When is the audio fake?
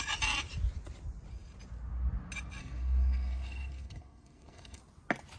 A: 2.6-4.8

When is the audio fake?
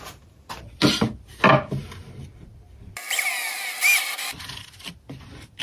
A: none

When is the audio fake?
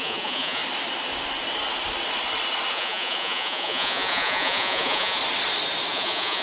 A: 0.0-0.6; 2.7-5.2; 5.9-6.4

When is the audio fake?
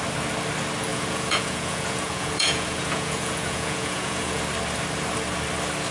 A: 0.9-4.4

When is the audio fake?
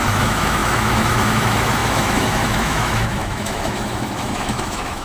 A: 0.0-5.0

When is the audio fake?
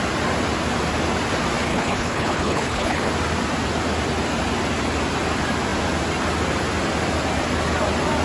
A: 1.7-3.1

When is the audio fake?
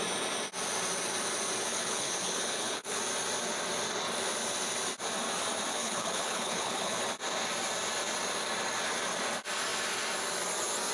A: 1.7-3.0; 5.7-7.0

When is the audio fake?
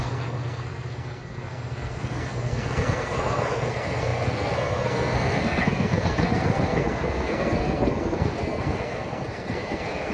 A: 0.0-10.1